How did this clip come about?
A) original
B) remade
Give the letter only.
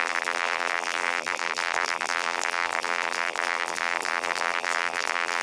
B